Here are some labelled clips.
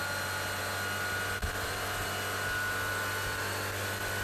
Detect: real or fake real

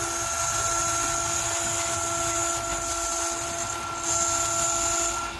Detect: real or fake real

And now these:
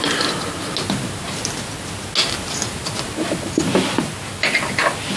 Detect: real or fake real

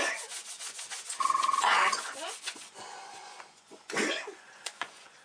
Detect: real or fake fake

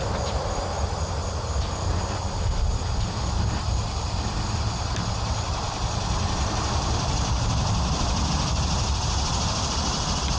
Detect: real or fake real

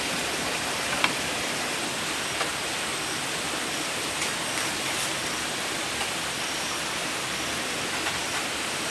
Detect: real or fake real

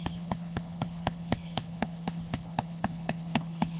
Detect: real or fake fake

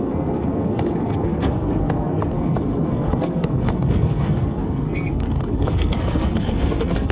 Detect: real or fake fake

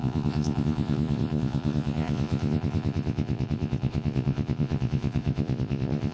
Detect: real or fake fake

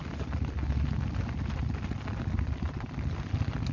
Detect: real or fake real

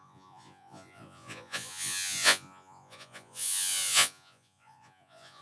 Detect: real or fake fake